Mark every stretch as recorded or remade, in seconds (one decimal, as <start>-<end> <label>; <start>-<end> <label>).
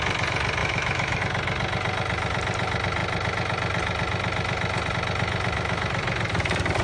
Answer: 0.0-0.6 recorded; 0.6-1.2 remade; 1.2-6.8 recorded